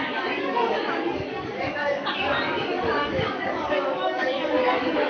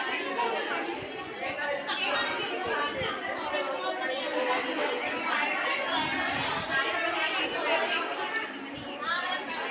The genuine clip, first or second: second